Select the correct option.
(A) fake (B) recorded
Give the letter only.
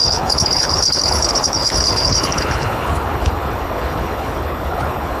A